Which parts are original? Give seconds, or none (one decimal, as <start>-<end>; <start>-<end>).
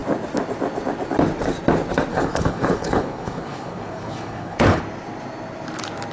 0.0-2.1; 4.8-6.1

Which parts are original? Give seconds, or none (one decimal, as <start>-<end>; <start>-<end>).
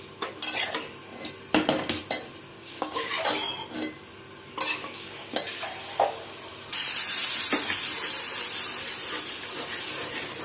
0.0-2.5; 3.1-4.7; 5.4-10.4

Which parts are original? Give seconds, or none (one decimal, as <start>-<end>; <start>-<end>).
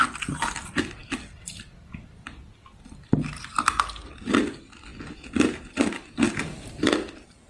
0.0-7.5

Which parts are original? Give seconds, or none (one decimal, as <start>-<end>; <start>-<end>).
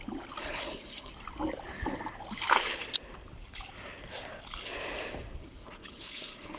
0.0-0.4; 1.1-5.4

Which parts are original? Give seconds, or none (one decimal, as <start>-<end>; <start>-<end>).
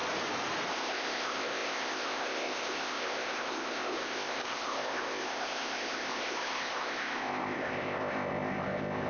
0.0-0.7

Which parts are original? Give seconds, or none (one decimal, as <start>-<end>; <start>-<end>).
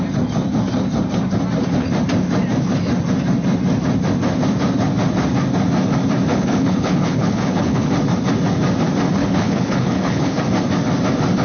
0.0-6.3; 7.9-9.2; 10.4-11.4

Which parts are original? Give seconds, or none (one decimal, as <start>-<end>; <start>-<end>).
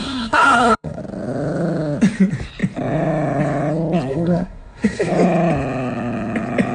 1.0-4.1; 5.1-6.7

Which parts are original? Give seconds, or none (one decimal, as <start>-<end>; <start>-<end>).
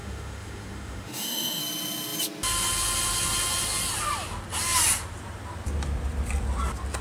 1.6-7.0